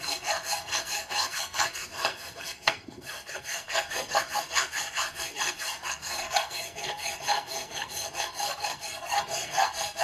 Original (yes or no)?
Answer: no